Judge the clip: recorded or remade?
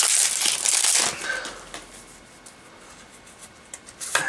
recorded